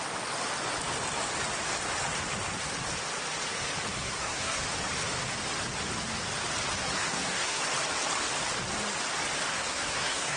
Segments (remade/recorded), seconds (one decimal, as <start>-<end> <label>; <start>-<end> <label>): 0.0-4.0 recorded; 4.0-4.6 remade; 4.6-6.8 recorded; 6.8-7.6 remade; 7.6-9.5 recorded; 9.5-10.4 remade